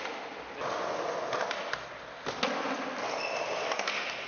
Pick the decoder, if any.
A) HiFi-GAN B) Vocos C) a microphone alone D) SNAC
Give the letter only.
C